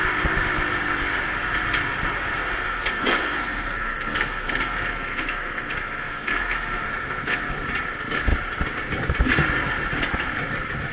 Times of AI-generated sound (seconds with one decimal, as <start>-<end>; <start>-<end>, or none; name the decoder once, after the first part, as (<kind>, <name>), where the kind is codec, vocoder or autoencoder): 2.4-7.5 (codec, SNAC)